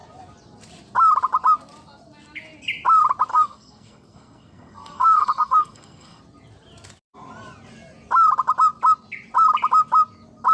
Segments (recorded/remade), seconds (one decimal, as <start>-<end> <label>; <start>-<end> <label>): 0.0-3.3 recorded; 3.3-6.2 remade; 6.2-10.5 recorded

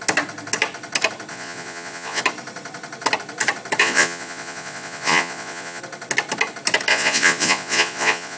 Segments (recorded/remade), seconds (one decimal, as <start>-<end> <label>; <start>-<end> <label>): 0.0-1.3 recorded; 1.3-2.2 remade; 2.2-3.8 recorded; 3.8-5.8 remade; 5.8-6.9 recorded; 6.9-8.4 remade

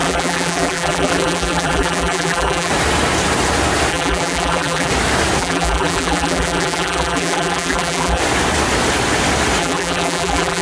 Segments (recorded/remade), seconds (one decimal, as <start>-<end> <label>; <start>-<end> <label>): 0.0-2.7 remade; 2.7-3.9 recorded; 3.9-4.9 remade; 4.9-5.4 recorded; 5.4-8.2 remade; 8.2-9.6 recorded; 9.6-10.6 remade

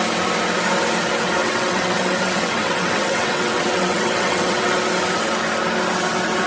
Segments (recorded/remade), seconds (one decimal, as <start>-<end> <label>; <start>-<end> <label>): 0.0-1.4 recorded; 1.4-4.7 remade; 4.7-6.5 recorded

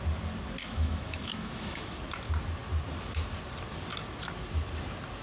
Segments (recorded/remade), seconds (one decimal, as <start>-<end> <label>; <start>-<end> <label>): 0.0-0.6 recorded; 0.6-2.0 remade; 2.0-5.2 recorded

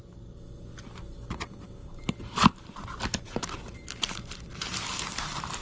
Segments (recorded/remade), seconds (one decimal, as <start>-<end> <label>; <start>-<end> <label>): 0.0-1.8 recorded; 1.8-5.6 remade